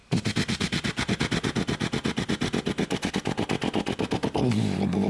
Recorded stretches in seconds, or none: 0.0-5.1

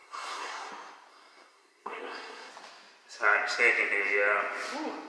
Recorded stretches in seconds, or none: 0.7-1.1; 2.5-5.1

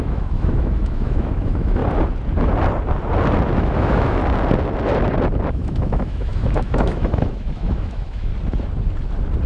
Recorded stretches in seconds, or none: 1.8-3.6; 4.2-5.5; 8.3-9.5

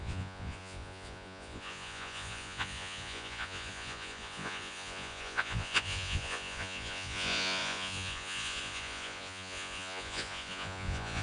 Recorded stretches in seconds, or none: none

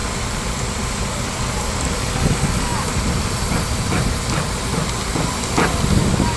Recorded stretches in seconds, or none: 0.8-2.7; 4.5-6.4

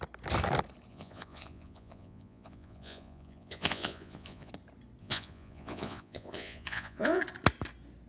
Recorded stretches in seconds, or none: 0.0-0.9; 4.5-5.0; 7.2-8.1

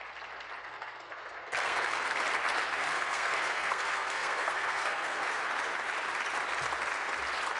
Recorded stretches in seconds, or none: 0.0-0.6; 2.2-2.8; 5.4-7.6